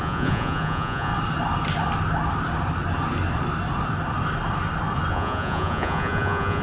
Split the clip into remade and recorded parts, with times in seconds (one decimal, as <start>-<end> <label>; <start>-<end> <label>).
0.0-1.1 remade; 1.1-5.1 recorded; 5.1-6.6 remade